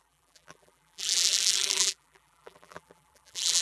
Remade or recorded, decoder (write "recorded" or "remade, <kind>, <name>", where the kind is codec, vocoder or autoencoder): remade, vocoder, BigVGAN v2